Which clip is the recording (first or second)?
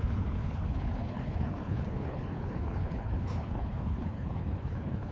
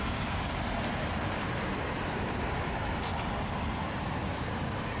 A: second